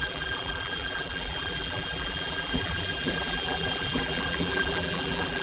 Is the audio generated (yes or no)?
yes